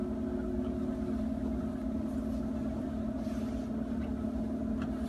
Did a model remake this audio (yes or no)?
no